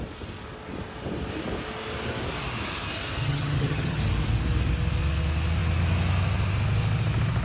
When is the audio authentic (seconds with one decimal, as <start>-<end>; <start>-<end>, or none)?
0.0-3.2; 4.0-7.4